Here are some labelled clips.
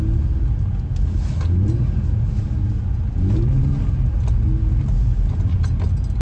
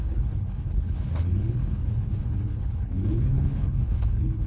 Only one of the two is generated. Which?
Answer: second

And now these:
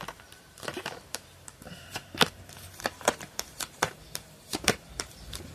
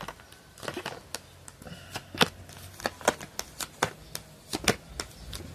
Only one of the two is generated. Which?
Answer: first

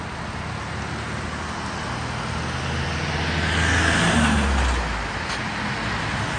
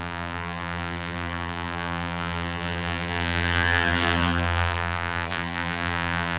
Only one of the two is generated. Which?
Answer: second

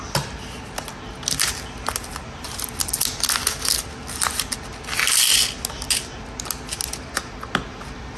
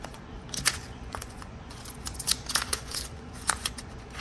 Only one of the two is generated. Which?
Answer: second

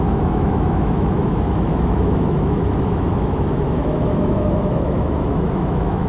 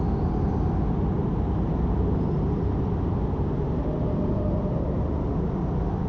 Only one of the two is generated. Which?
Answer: first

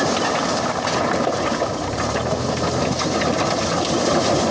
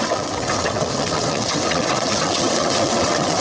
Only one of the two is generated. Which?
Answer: second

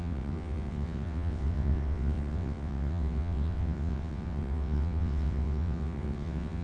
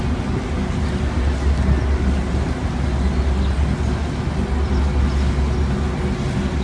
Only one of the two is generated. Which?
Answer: first